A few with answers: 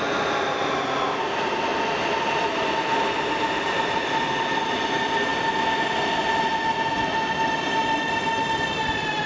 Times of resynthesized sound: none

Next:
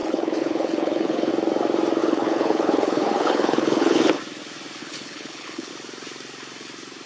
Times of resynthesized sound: 0.0-1.3 (codec, HILCodec); 2.0-4.2; 4.8-5.7